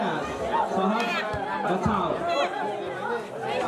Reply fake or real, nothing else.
real